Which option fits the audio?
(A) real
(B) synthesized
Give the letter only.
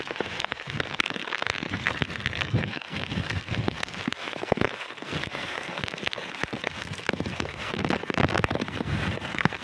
B